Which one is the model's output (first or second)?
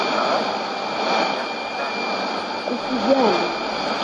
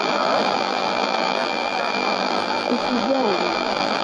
second